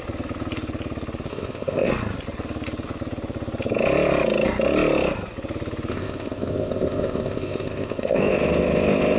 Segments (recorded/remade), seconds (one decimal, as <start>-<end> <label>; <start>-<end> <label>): 0.0-1.3 recorded; 1.3-1.9 remade; 1.9-5.9 recorded; 5.9-9.2 remade